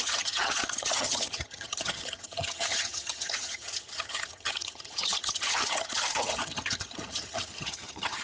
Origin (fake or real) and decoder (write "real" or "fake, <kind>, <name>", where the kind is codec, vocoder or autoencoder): fake, vocoder, HiFi-GAN